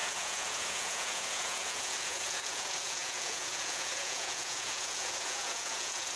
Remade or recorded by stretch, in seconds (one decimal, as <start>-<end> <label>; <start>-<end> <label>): 0.0-6.2 remade